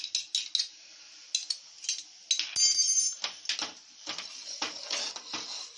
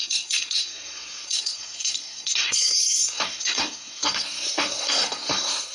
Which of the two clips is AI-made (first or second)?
second